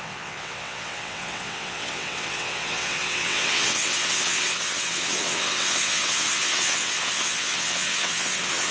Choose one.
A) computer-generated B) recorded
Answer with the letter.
A